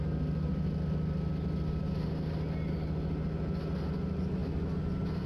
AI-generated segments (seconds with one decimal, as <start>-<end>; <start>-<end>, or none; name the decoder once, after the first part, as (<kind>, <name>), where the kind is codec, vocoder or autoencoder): none